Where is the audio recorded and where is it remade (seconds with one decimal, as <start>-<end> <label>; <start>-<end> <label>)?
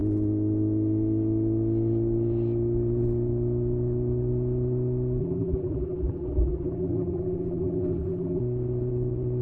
0.0-5.2 recorded; 5.2-8.4 remade; 8.4-9.4 recorded